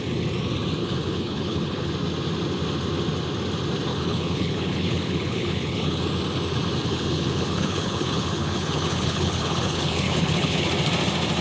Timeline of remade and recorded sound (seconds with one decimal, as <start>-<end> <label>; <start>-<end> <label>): 0.0-0.8 recorded; 0.8-1.9 remade; 1.9-3.9 recorded; 3.9-6.0 remade; 6.0-6.8 recorded; 6.8-10.7 remade; 10.7-11.4 recorded